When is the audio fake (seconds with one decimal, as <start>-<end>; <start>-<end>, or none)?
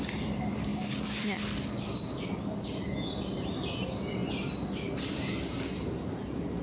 0.0-0.7; 3.2-4.2; 5.9-6.6